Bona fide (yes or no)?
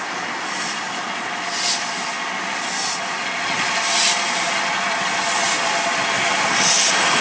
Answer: yes